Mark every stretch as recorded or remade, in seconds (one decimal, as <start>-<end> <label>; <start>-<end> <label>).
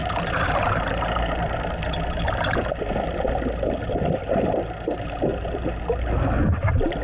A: 0.0-1.3 remade; 1.3-5.3 recorded; 5.3-5.8 remade; 5.8-7.0 recorded